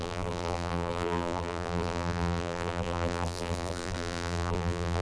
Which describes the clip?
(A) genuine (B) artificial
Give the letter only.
B